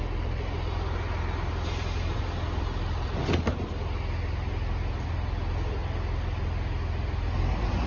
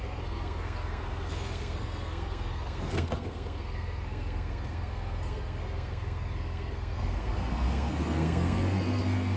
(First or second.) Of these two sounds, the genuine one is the first